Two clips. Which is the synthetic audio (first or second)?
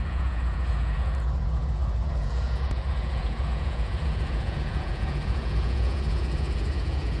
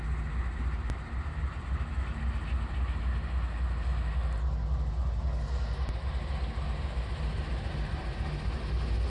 first